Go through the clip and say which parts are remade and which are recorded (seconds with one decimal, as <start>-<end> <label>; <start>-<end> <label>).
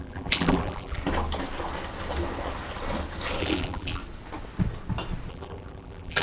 0.0-1.0 remade; 1.0-3.4 recorded; 3.4-4.0 remade; 4.0-5.3 recorded; 5.3-6.2 remade